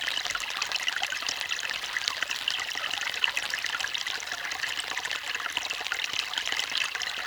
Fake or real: real